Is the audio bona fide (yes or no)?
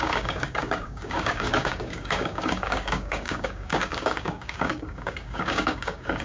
no